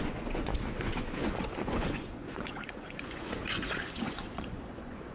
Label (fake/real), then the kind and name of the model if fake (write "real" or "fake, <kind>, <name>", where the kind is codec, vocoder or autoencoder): fake, vocoder, Vocos